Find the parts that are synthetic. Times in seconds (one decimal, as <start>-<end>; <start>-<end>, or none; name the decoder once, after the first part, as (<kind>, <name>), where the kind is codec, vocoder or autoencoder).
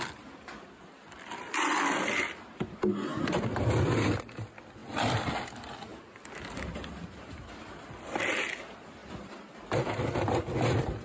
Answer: none